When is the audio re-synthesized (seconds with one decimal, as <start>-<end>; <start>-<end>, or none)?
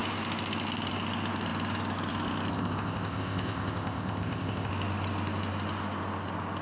2.5-4.7